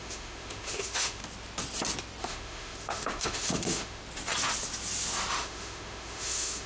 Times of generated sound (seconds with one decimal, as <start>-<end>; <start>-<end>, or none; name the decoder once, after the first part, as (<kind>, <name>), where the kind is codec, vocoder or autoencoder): 0.0-1.2 (autoencoder, DAC-VAE); 2.2-4.0; 5.3-6.7